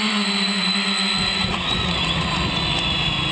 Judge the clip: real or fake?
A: fake